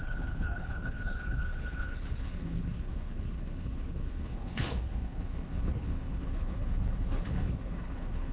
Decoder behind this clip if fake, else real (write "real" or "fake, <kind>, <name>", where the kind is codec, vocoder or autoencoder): fake, codec, HILCodec